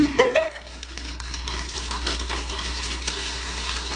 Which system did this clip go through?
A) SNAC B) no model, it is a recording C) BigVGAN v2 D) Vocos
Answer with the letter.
A